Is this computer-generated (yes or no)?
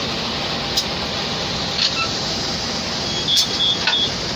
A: no